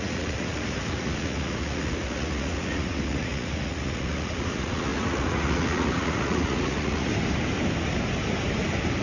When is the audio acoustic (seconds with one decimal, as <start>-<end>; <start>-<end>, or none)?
7.1-9.0